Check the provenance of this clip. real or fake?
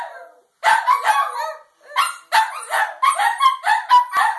real